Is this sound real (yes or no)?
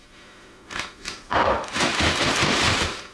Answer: no